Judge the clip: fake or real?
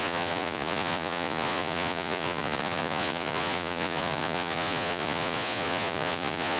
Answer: fake